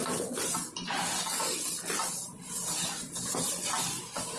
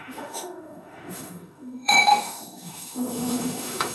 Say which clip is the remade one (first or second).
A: second